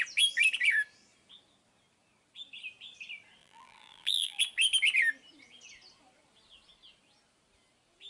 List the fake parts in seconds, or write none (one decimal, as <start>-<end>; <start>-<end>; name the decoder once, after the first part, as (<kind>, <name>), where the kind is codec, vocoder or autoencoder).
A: 3.4-4.4 (vocoder, BigVGAN v2)

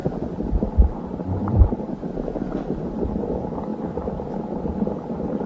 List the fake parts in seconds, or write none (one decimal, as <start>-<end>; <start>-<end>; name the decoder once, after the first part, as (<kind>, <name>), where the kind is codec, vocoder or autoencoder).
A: 0.0-2.1 (vocoder, BigVGAN v2)

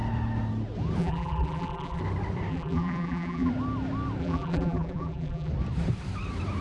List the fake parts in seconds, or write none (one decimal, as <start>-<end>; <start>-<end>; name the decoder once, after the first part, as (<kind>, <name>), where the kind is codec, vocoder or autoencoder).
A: 1.0-2.0 (vocoder, BigVGAN v2); 2.5-3.5; 4.2-5.5

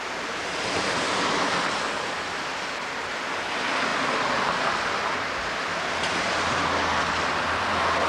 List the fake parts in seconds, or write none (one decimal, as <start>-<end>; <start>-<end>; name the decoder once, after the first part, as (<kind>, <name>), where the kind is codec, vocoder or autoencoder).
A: 3.9-7.1 (vocoder, BigVGAN v2)

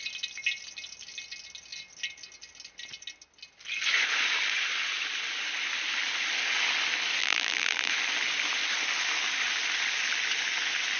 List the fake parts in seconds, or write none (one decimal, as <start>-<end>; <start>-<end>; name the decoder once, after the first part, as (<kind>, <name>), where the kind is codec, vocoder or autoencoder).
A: 7.2-7.9 (vocoder, BigVGAN v2)